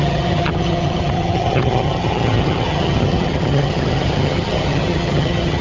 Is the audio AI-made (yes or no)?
yes